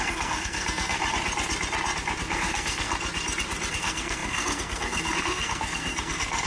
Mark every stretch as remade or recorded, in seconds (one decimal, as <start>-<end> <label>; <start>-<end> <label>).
0.0-1.0 remade; 1.0-2.3 recorded; 2.3-2.9 remade; 2.9-3.7 recorded; 3.7-6.5 remade